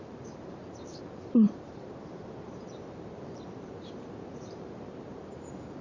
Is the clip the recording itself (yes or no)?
no